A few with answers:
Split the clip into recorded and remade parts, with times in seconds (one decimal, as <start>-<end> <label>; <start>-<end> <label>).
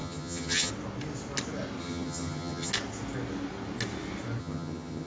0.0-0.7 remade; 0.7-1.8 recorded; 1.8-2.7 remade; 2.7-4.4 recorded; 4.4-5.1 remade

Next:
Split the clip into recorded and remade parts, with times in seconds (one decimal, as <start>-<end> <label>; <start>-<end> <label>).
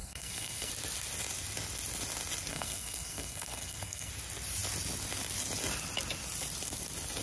0.0-0.7 remade; 0.7-2.5 recorded; 2.5-4.1 remade; 4.1-7.2 recorded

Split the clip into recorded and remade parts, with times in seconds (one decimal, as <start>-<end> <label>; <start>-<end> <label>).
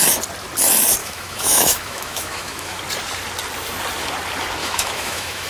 0.0-1.0 recorded; 1.0-2.8 remade; 2.8-4.6 recorded; 4.6-5.5 remade